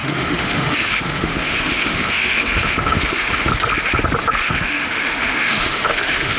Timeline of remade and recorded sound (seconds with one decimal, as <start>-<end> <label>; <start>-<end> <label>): 0.0-3.5 remade; 3.5-4.4 recorded; 4.4-6.4 remade